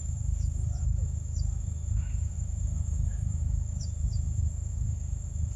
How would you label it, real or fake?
fake